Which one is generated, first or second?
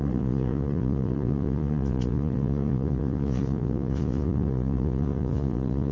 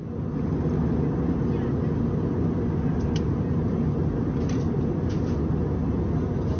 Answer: first